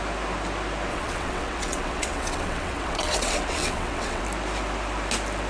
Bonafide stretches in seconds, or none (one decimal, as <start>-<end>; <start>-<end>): 0.0-0.9; 4.2-5.5